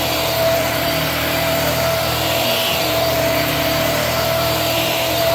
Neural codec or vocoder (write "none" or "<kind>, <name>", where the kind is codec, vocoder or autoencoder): vocoder, BigVGAN v2